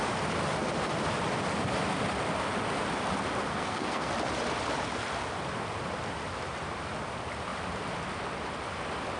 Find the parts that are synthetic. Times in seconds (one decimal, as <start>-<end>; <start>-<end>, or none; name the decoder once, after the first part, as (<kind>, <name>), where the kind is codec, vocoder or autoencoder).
3.5-4.1 (codec, SNAC)